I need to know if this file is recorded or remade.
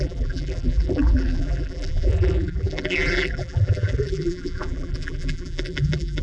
remade